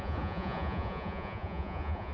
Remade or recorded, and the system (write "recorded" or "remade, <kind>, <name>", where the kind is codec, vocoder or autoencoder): remade, vocoder, Vocos